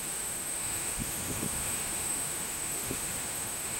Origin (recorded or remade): remade